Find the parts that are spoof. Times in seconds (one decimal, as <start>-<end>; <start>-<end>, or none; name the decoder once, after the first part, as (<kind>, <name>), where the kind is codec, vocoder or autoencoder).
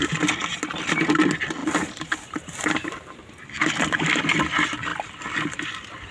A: none